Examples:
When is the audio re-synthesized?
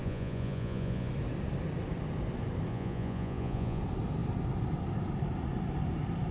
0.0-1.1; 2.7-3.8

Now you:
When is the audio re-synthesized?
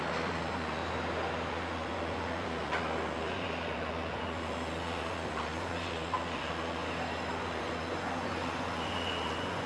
0.0-0.8; 1.5-6.8; 7.3-9.7